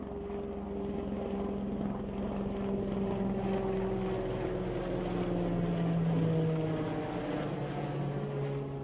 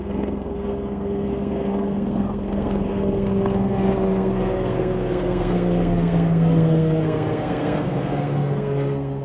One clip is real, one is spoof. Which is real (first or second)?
first